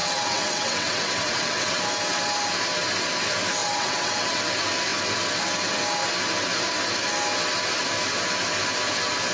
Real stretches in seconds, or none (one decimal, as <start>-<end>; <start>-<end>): 1.8-3.6; 4.4-9.3